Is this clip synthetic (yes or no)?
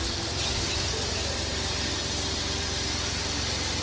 yes